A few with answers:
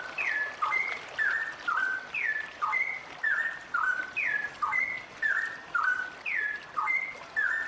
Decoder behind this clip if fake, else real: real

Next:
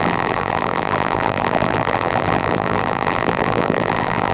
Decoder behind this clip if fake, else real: fake, vocoder, BigVGAN v2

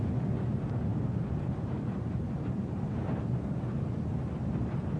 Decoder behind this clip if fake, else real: fake, vocoder, BigVGAN v2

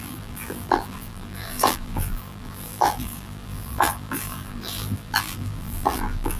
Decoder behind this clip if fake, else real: fake, vocoder, BigVGAN v2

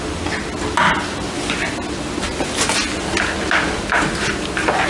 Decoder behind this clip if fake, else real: real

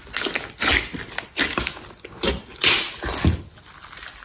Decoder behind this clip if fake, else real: real